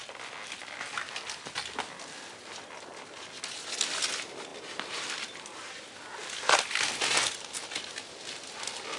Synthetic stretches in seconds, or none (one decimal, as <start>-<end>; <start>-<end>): none